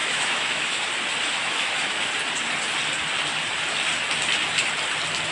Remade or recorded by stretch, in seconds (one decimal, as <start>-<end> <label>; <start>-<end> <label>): 0.0-0.8 remade; 0.8-1.3 recorded; 1.3-2.1 remade; 2.1-5.3 recorded